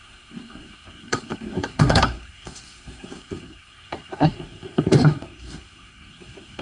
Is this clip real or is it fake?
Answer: fake